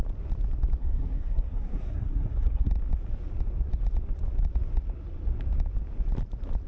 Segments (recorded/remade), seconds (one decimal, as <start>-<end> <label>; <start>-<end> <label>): 0.0-0.8 recorded; 0.8-2.7 remade; 2.7-6.7 recorded